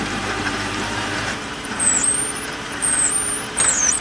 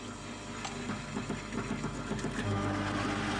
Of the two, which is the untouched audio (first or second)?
second